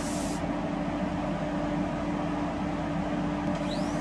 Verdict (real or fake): real